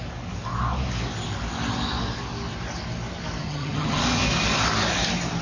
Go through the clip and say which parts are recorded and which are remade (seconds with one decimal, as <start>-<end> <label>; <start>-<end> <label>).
0.0-3.4 recorded; 3.4-4.0 remade; 4.0-5.4 recorded